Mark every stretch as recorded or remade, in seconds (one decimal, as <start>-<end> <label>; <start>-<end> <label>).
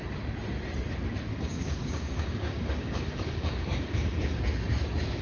0.0-1.3 recorded; 1.3-4.4 remade; 4.4-5.2 recorded